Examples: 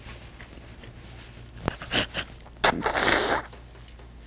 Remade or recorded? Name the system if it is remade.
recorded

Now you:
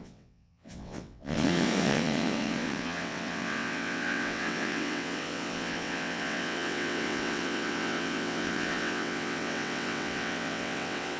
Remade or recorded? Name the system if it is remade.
remade, vocoder, WaveNeXt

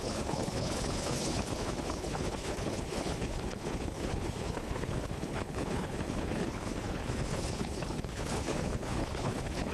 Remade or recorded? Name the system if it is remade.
remade, codec, HILCodec